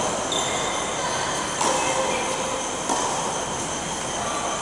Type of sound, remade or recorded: recorded